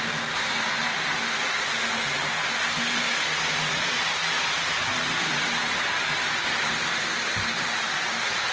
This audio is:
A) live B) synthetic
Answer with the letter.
A